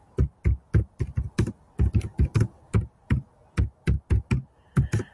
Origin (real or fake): real